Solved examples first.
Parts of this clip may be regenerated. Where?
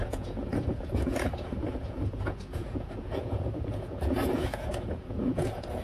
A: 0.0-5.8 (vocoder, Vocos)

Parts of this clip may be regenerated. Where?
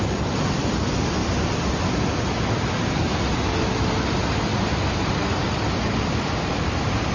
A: none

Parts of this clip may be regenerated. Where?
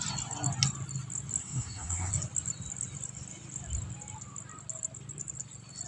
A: 1.4-2.1 (codec, SNAC)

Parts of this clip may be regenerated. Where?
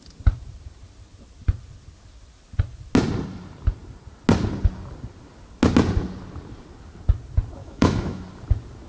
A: 7.6-8.2 (autoencoder, DAC-VAE)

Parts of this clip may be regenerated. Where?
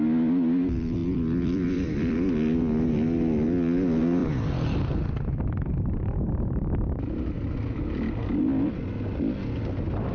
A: 1.0-2.3 (vocoder, BigVGAN v2); 4.2-7.0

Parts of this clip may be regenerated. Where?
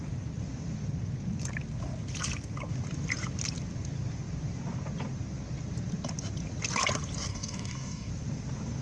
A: 7.3-8.1 (codec, DAC)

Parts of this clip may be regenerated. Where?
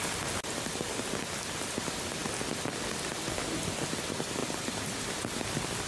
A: none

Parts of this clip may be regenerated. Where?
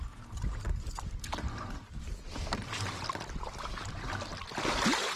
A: none